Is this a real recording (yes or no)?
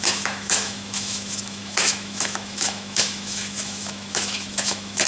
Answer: no